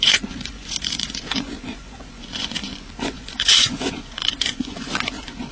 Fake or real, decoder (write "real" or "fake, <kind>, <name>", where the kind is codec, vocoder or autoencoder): fake, vocoder, Vocos